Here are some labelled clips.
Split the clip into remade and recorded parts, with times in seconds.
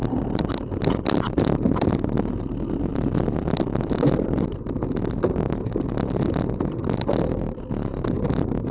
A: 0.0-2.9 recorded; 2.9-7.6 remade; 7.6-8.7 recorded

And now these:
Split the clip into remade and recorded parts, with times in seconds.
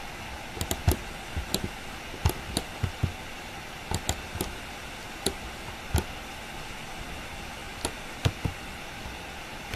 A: 0.0-9.8 recorded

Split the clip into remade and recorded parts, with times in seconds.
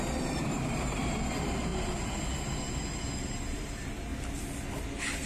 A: 0.0-1.7 remade; 1.7-3.3 recorded; 3.3-4.1 remade; 4.1-4.8 recorded; 4.8-5.3 remade